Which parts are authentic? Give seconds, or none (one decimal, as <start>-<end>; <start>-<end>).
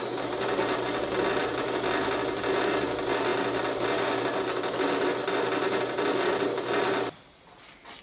0.0-8.0